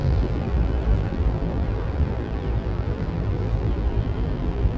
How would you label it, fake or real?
fake